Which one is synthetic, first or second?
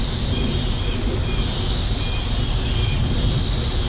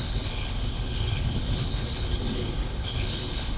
second